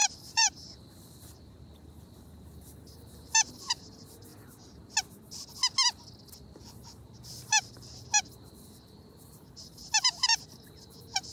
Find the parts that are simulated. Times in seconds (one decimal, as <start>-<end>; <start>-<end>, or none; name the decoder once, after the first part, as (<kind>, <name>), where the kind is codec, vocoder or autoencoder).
0.0-4.3 (vocoder, BigVGAN v2); 7.3-11.3